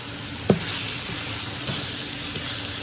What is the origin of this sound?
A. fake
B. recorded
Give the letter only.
B